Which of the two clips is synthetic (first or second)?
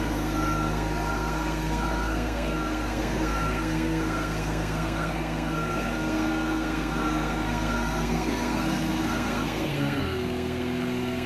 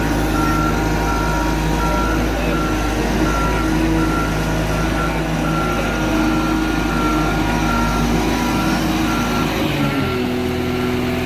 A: first